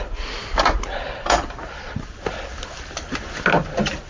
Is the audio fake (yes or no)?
no